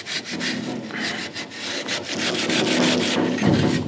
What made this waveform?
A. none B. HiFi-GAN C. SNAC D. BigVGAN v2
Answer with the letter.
A